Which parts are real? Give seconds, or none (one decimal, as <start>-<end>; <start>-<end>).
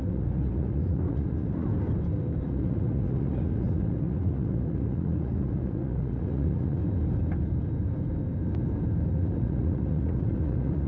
1.7-2.4; 6.8-9.1